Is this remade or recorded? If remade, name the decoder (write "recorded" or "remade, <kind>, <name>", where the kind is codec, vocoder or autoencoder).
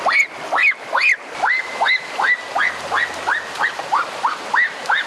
recorded